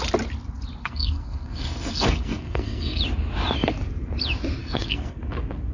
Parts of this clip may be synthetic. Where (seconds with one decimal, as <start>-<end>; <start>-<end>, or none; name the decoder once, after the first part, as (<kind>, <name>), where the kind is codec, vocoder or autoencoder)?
0.8-3.0 (codec, SNAC); 4.6-5.2